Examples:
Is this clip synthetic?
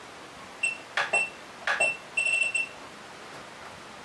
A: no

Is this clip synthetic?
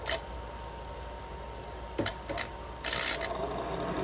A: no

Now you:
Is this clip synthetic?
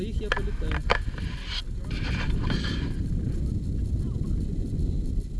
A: no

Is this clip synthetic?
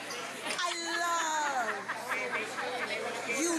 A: no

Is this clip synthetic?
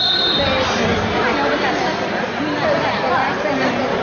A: no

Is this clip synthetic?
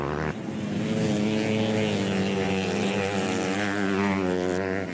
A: no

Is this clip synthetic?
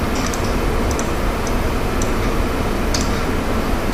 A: no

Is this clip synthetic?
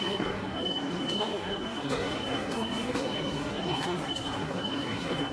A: yes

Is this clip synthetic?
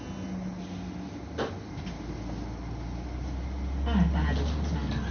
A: no